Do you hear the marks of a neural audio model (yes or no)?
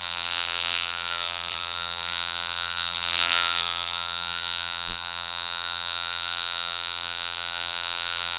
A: yes